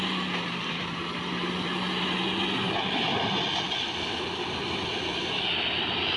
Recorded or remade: recorded